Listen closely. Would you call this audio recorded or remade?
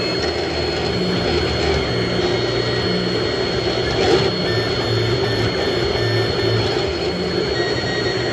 recorded